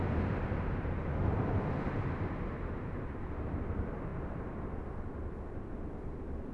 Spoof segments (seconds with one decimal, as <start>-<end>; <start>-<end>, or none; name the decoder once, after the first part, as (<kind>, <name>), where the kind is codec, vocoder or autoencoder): none

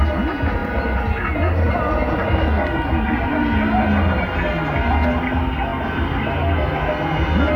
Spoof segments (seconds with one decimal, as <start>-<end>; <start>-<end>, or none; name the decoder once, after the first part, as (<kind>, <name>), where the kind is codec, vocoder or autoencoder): none

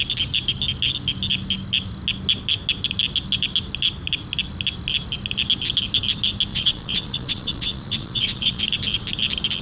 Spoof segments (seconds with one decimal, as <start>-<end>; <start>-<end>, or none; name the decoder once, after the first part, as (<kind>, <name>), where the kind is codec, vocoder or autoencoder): 6.5-8.6 (vocoder, Vocos)

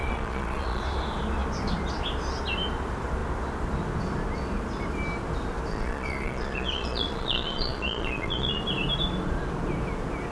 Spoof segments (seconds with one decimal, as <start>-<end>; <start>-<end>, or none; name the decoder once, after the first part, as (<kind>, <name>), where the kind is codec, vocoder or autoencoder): 0.0-0.8 (vocoder, Vocos); 5.7-8.6

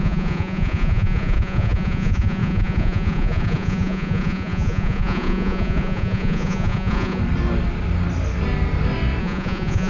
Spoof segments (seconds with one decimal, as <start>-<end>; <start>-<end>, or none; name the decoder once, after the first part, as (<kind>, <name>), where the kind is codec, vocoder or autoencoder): 0.0-7.2 (vocoder, Vocos); 9.2-9.9

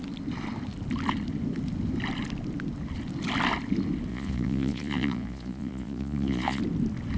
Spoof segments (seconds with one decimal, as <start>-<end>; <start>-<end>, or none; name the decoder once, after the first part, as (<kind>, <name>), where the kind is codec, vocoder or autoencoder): 4.1-6.6 (vocoder, Vocos)

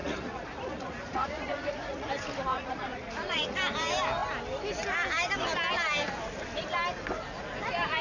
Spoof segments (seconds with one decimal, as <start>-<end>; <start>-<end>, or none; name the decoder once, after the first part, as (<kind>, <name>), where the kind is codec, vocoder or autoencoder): 0.0-2.1 (vocoder, Vocos); 2.5-3.6